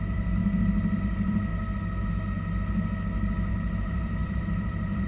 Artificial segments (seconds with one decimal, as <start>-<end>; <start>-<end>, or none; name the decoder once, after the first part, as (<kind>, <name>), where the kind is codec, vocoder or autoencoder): 0.0-0.4 (vocoder, BigVGAN v2); 1.0-1.5; 3.5-5.1